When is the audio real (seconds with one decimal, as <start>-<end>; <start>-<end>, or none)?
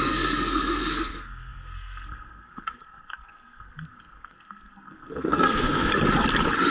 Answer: 5.9-6.7